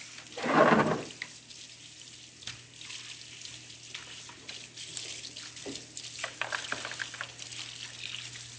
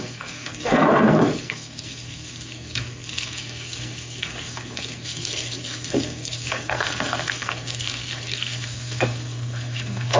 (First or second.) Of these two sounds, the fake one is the second